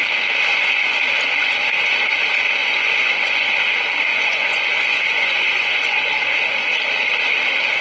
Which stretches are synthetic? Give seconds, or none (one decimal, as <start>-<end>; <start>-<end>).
0.5-1.0; 2.6-3.5; 4.1-6.1

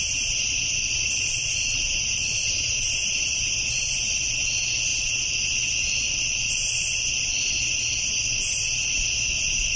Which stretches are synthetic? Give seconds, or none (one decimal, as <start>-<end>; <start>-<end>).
1.4-4.1

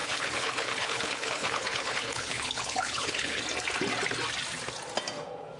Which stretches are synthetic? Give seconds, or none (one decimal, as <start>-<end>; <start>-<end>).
0.0-3.4

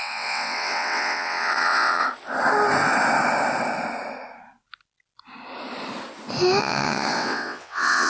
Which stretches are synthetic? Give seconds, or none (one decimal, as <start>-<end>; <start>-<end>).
0.0-2.0; 6.6-8.1

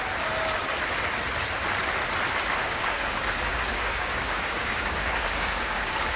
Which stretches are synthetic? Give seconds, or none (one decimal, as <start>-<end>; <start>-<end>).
2.6-6.2

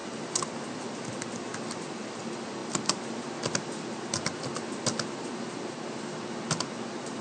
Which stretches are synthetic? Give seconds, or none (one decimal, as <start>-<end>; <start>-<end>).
none